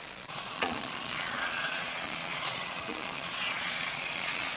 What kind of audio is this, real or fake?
fake